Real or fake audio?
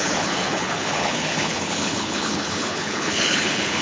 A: fake